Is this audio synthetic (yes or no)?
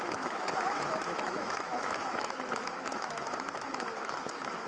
yes